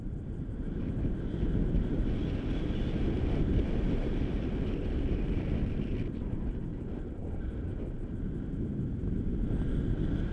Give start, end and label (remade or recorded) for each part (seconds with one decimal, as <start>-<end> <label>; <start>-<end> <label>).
0.0-10.3 recorded